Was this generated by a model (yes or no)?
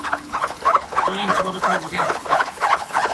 yes